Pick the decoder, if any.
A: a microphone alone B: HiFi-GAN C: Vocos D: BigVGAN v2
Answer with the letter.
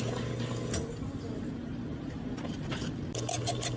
A